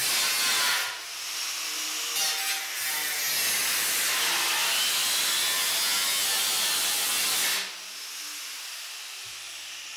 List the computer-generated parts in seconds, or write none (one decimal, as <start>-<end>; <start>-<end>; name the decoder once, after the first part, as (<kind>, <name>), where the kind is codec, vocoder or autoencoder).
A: none